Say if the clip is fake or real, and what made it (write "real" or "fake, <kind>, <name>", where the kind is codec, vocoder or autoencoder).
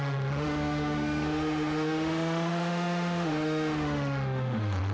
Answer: fake, autoencoder, DAC-VAE